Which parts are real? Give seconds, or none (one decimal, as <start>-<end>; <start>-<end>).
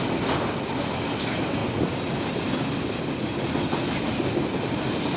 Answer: 0.0-5.2